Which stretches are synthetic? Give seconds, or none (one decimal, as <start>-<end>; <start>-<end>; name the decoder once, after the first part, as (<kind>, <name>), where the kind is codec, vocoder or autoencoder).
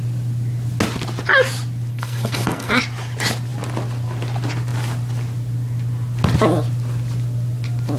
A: 1.9-2.8 (codec, SNAC)